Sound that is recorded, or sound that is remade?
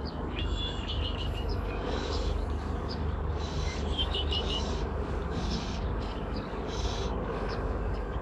remade